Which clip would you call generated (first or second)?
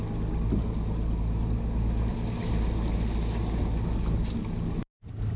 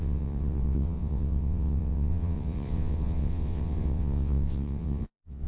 second